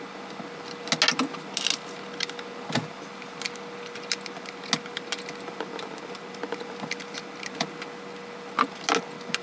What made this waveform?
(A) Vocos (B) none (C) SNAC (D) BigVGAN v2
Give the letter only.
B